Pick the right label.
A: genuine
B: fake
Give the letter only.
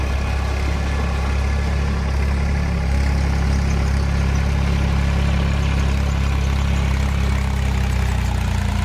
A